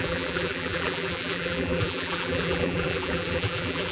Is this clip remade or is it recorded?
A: remade